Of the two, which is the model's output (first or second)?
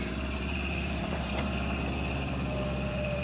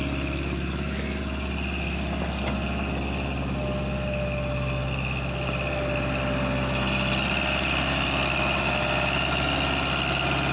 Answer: first